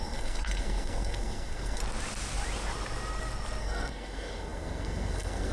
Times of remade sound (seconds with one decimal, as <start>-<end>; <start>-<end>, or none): 0.0-1.8; 3.6-5.5